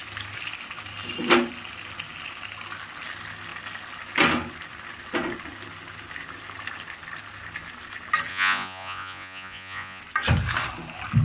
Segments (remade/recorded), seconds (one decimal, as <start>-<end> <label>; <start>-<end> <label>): 0.0-8.3 recorded; 8.3-10.0 remade; 10.0-11.2 recorded